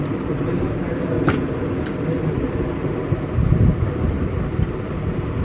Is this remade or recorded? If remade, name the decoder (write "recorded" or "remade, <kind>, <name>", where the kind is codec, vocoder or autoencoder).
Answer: recorded